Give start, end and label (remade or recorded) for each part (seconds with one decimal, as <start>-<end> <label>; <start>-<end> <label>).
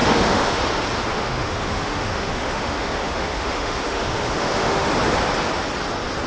0.0-0.6 remade; 0.6-1.1 recorded; 1.1-4.9 remade; 4.9-6.3 recorded